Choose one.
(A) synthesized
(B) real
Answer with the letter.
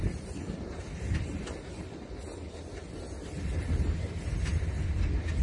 B